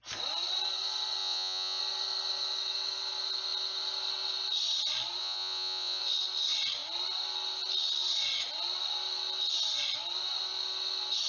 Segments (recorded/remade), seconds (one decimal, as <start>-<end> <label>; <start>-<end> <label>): 0.0-1.2 recorded; 1.2-1.8 remade; 1.8-5.2 recorded; 5.2-6.0 remade; 6.0-11.3 recorded